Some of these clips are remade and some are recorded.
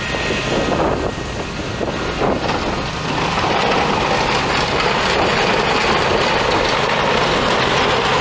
recorded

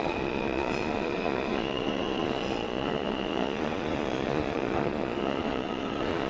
remade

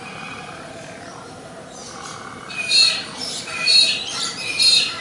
remade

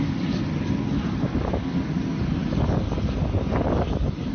recorded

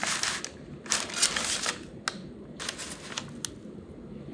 recorded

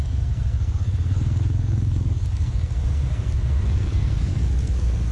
remade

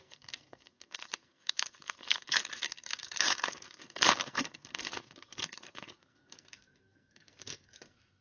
remade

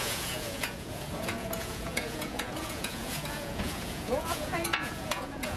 remade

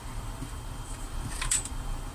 remade